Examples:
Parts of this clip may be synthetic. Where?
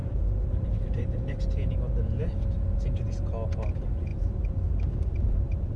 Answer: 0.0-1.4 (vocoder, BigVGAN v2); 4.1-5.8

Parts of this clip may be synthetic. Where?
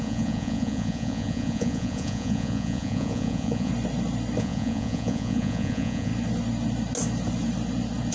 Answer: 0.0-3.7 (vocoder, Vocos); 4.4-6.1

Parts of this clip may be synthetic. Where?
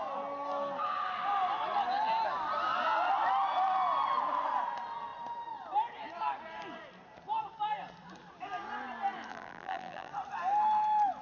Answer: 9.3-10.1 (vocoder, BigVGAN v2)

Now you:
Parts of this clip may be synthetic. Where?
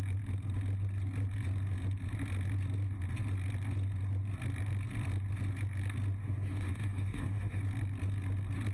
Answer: 6.2-7.6 (autoencoder, DAC-VAE)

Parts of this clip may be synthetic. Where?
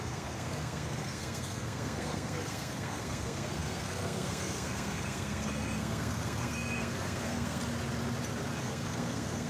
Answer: 0.0-7.6 (codec, SNAC); 8.6-9.5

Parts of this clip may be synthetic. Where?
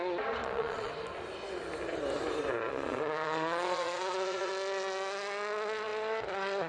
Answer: 0.4-0.9 (vocoder, Vocos); 2.7-4.5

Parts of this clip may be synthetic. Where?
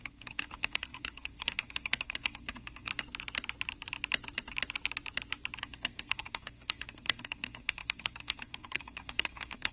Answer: 0.0-2.9 (codec, SNAC); 5.6-9.7